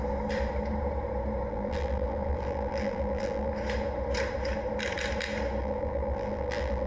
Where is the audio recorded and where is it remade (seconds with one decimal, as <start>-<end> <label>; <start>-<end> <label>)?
0.0-1.5 recorded; 1.5-3.5 remade; 3.5-5.6 recorded; 5.6-6.9 remade